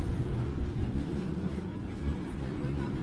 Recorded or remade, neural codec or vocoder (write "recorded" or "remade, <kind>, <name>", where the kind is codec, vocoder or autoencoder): remade, vocoder, Vocos